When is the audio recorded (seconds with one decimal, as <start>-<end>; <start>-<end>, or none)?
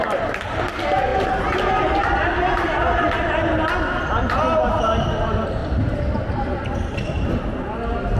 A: 0.0-5.6; 7.3-8.2